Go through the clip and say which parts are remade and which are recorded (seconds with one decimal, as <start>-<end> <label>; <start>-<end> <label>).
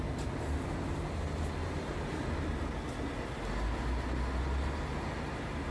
0.0-1.6 recorded; 1.6-2.7 remade; 2.7-4.9 recorded; 4.9-5.7 remade